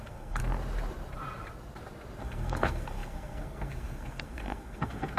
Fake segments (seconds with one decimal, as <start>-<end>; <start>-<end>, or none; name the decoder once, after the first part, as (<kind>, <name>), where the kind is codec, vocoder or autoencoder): 0.0-0.4 (codec, SNAC); 2.2-5.2